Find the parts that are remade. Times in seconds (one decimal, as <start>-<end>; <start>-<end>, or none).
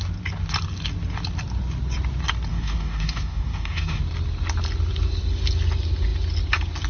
2.5-4.0